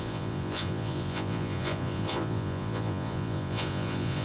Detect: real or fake fake